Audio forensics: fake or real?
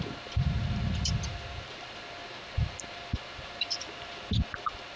real